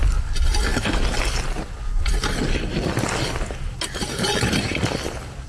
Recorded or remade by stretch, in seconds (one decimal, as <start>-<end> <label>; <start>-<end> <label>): 0.0-5.5 recorded